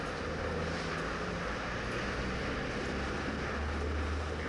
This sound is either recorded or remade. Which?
recorded